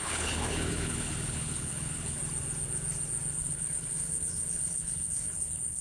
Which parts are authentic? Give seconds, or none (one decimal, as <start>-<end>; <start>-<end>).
2.2-3.4

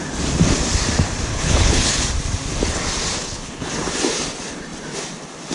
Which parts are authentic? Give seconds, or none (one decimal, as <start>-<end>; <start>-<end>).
0.0-1.3; 2.0-3.2; 3.7-5.5